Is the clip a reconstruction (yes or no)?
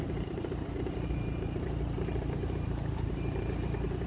yes